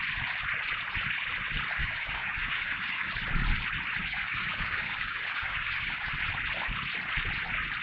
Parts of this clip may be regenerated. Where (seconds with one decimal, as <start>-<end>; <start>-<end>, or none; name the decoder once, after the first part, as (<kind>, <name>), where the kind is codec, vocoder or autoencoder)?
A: 1.8-3.1 (codec, DAC); 4.0-6.1